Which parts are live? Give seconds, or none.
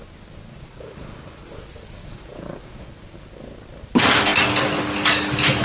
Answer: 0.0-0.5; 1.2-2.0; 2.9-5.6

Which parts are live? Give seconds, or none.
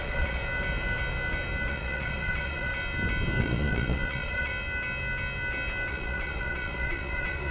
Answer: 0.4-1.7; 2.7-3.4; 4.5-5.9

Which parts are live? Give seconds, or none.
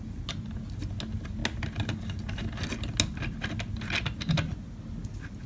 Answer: 0.0-5.5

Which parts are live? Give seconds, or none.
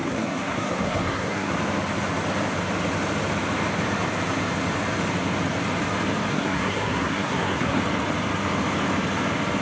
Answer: 1.5-6.3; 7.8-9.6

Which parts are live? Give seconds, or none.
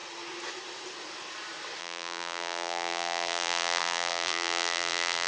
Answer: 0.0-1.8